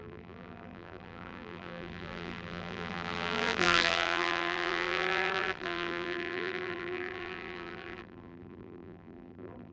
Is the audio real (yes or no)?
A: no